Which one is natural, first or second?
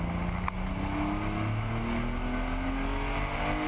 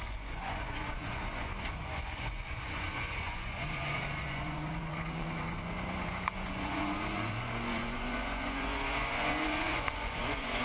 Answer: first